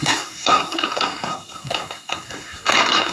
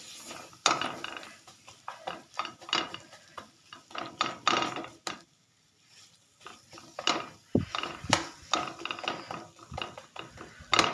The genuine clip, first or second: second